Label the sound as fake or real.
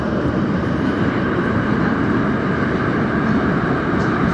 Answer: fake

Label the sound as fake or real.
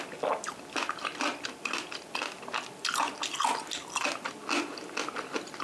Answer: real